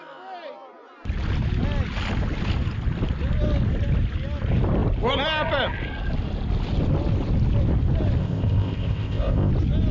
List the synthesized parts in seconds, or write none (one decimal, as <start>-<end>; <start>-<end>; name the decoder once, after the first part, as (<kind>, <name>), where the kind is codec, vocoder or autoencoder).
8.2-9.5 (codec, ZipCodec)